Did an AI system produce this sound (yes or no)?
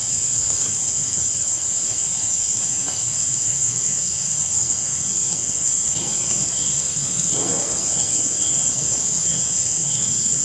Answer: yes